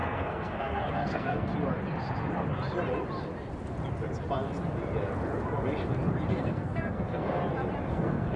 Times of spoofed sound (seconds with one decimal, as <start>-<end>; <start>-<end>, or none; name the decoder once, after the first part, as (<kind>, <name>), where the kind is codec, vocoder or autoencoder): 0.0-1.5 (codec, SNAC); 6.3-7.4; 7.9-8.4